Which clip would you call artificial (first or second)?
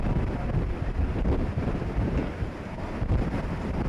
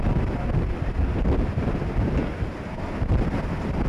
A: first